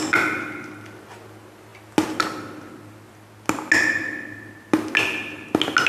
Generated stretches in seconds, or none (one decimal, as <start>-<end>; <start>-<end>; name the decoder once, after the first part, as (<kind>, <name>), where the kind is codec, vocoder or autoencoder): none